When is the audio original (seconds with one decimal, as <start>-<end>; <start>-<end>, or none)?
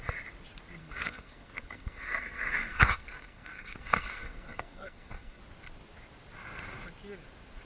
0.0-0.8; 5.4-7.7